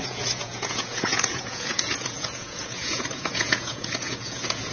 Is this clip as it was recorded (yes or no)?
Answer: no